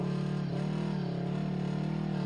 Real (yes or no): yes